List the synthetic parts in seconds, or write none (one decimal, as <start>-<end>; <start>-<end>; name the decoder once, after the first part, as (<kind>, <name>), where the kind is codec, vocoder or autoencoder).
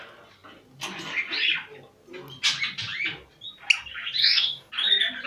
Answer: 4.2-4.7 (codec, DAC)